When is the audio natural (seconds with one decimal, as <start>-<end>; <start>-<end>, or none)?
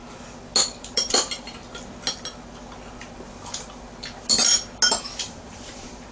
0.0-0.8; 1.6-5.2